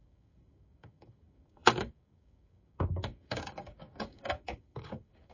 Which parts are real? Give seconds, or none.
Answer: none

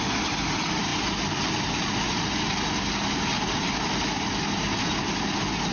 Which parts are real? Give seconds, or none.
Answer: 0.0-5.7

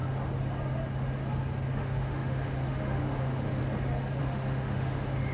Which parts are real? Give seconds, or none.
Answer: 0.0-1.8; 3.6-4.2

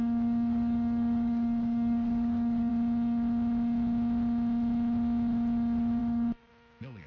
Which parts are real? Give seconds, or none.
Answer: 2.7-6.0; 6.5-7.1

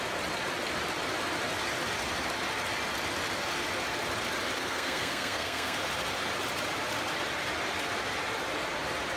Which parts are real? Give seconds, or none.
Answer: 0.0-4.6; 5.8-9.2

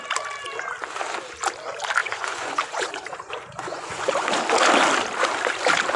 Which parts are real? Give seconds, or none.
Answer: 0.0-2.0; 4.3-6.0

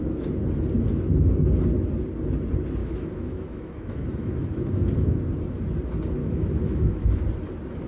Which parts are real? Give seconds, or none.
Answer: 0.0-2.8; 5.2-6.2; 7.2-7.9

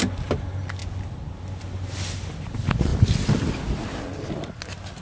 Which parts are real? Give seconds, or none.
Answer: 0.0-5.0